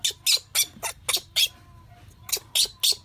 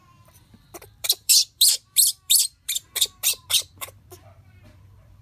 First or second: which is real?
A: first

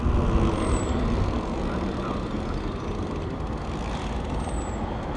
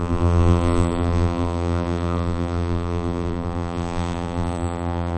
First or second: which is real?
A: first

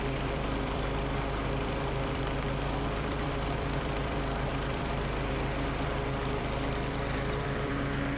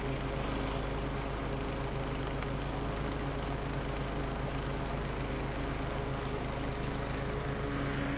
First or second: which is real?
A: second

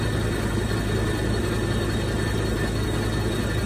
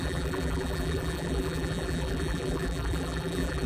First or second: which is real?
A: first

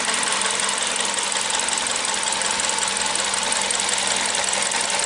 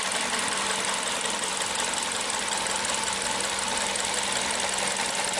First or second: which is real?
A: first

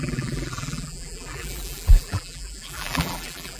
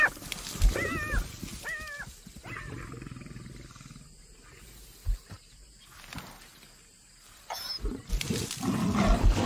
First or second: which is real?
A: second